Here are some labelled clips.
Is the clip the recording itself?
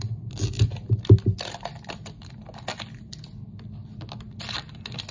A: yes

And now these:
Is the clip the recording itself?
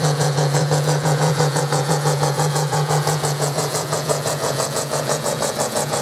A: no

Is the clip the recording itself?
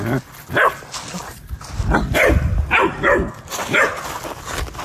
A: yes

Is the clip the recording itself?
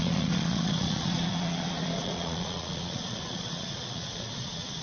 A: no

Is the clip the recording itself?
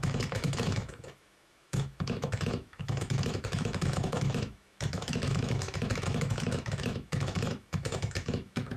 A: no